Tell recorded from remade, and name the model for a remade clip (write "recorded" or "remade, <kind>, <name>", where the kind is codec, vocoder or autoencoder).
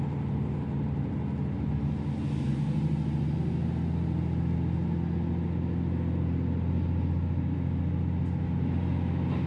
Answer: recorded